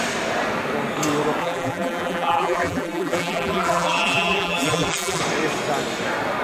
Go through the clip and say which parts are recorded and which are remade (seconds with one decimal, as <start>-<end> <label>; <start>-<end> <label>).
0.0-1.4 recorded; 1.4-5.2 remade; 5.2-6.4 recorded